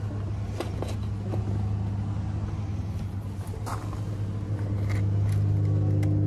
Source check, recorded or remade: recorded